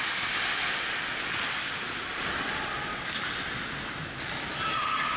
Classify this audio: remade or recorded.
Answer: recorded